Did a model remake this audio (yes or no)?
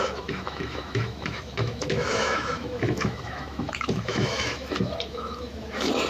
yes